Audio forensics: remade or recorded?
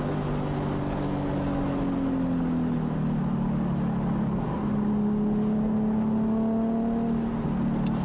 recorded